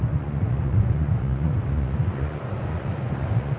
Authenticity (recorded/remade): remade